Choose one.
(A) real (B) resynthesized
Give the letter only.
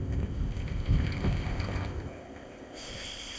B